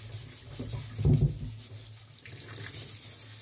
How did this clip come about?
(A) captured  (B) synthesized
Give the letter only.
A